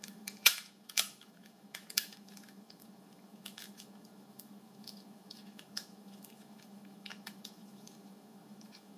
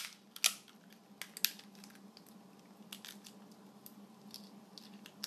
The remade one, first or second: first